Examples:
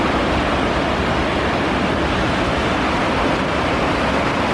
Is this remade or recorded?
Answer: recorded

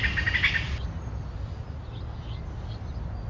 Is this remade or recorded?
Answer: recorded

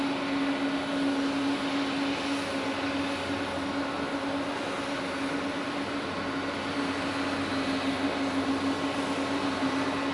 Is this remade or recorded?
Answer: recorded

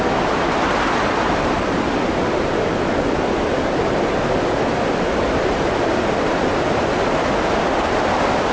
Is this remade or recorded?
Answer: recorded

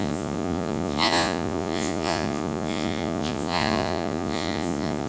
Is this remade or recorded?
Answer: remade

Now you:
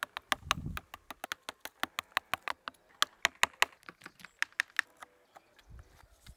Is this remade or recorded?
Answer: recorded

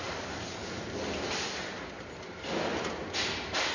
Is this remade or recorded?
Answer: recorded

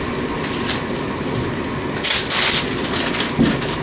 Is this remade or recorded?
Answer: recorded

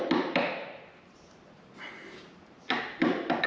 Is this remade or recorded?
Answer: recorded